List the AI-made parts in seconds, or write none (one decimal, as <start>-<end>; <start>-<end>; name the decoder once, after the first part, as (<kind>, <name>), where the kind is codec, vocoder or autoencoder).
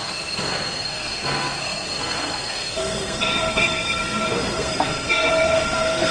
0.0-6.1 (codec, SNAC)